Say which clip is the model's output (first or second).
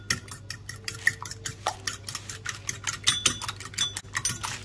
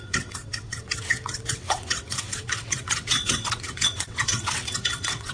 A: second